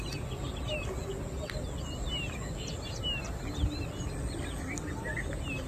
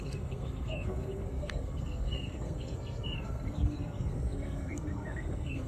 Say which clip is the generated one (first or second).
second